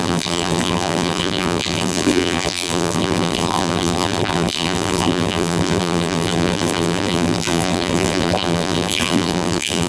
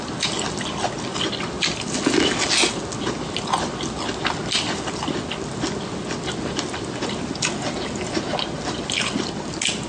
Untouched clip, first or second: second